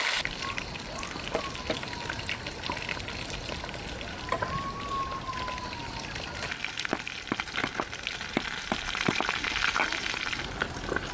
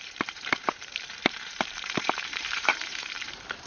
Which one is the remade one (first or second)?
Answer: second